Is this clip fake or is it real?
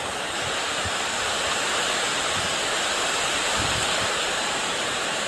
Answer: fake